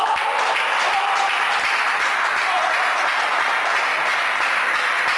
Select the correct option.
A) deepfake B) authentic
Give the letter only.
B